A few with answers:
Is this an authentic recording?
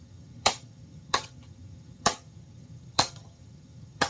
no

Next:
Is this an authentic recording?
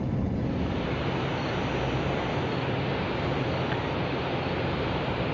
yes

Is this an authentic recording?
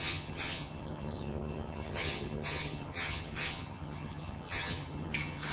no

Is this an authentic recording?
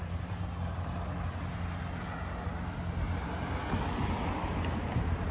yes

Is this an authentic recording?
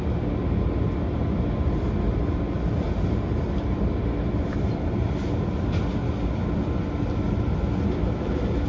yes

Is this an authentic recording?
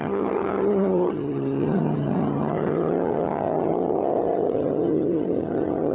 no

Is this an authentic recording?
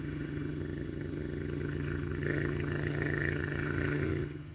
no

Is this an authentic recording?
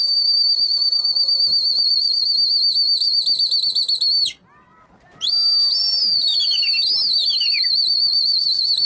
yes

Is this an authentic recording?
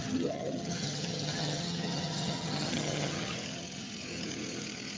no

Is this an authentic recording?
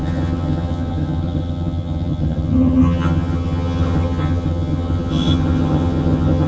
no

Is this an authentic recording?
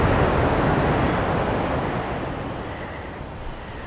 yes